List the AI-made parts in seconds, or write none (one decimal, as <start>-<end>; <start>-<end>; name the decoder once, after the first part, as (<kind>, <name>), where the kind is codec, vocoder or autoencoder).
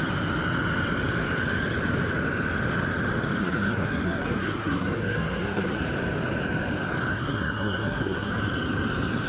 3.4-5.8 (codec, SNAC); 7.1-8.3